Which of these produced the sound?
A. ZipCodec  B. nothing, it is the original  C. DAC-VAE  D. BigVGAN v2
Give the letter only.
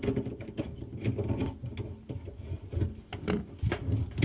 B